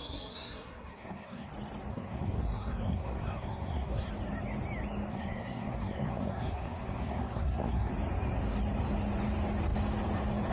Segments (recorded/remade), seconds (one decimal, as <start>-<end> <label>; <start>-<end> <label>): 0.0-1.5 remade; 1.5-1.9 recorded; 1.9-4.1 remade; 4.1-5.1 recorded; 5.1-7.9 remade; 7.9-10.5 recorded